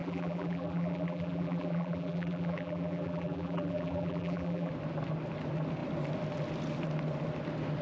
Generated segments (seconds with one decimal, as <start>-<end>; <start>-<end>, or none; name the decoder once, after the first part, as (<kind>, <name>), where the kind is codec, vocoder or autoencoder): 0.0-4.7 (vocoder, BigVGAN v2)